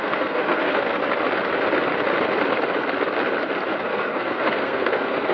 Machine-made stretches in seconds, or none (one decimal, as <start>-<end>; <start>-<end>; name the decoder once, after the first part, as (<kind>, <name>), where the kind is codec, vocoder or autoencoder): 0.0-1.0 (codec, SNAC); 3.8-5.3